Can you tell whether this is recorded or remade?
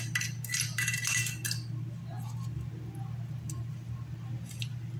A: recorded